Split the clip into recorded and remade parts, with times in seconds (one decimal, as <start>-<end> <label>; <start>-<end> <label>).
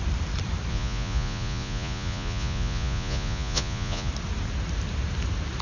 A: 0.0-0.7 recorded; 0.7-4.1 remade; 4.1-5.6 recorded